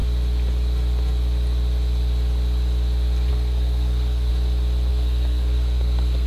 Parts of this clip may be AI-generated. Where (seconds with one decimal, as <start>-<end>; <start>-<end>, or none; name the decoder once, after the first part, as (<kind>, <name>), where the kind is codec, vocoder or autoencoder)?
3.3-4.3 (codec, SNAC); 4.9-6.3